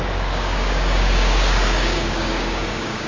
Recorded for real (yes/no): no